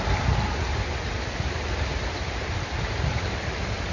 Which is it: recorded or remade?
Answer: recorded